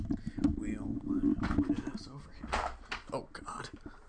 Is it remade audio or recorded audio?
recorded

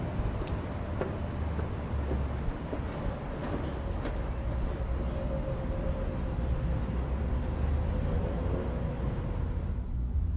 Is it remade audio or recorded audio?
recorded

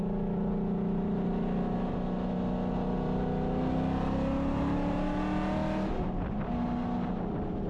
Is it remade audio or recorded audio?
recorded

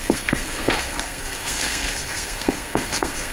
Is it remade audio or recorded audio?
remade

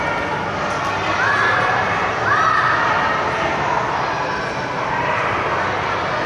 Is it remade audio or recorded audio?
recorded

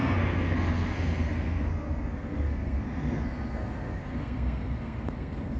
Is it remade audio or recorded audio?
remade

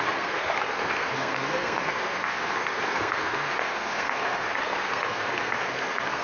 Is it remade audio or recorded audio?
remade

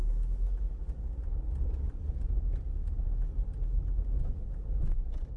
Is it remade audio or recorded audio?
recorded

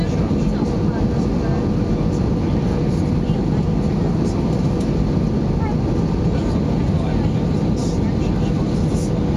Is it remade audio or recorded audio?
recorded